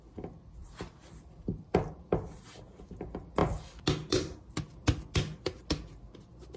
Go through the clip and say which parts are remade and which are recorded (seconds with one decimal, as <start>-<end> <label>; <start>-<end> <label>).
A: 0.0-0.6 recorded; 0.6-1.9 remade; 1.9-6.6 recorded